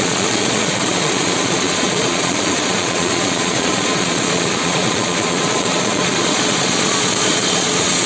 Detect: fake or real fake